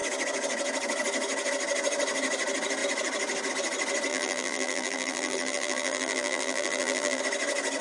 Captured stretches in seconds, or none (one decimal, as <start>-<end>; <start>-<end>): 0.0-4.1; 7.2-7.8